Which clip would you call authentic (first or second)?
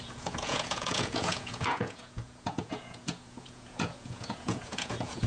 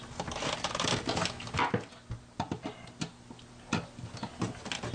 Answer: second